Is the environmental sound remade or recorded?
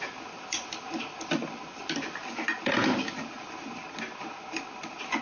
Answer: recorded